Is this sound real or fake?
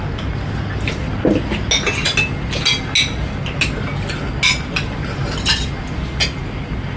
real